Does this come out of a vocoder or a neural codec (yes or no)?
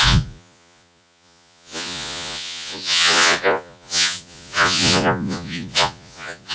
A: yes